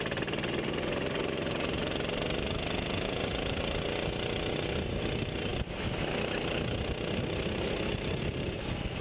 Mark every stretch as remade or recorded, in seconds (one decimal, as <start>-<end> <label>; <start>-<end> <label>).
0.0-9.0 recorded